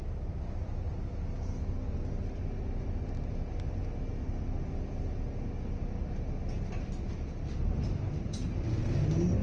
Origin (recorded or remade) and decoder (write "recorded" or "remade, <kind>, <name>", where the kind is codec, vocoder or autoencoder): recorded